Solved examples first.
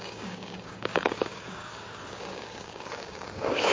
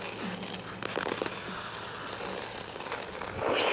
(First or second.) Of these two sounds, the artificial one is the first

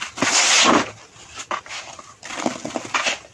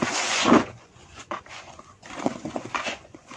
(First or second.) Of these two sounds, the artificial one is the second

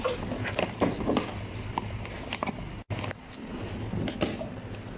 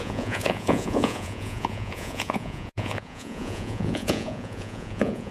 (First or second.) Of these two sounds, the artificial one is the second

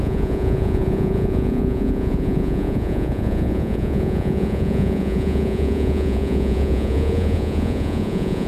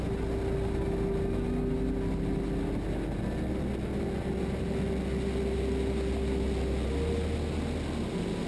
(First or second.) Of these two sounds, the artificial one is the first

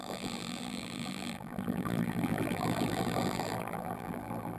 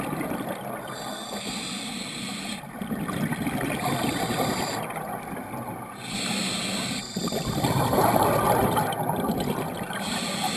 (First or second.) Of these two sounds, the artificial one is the first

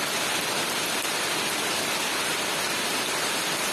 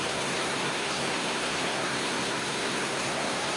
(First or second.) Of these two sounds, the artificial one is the second